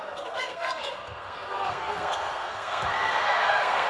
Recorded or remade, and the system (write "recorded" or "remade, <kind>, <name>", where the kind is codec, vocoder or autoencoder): remade, codec, SNAC